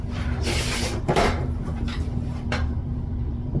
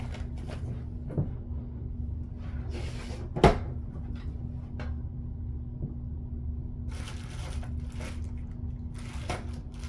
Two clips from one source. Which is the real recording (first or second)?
second